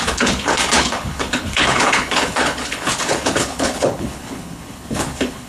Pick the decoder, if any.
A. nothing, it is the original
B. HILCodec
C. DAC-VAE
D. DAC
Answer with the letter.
B